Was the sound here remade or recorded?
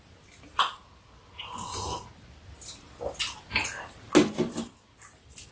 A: recorded